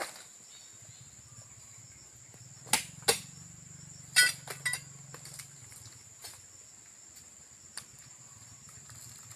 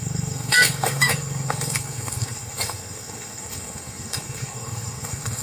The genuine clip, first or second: first